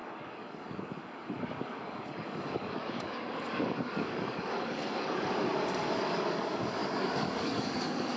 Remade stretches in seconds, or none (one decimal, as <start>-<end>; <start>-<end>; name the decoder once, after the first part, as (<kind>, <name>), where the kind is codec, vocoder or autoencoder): 0.0-8.2 (codec, DAC)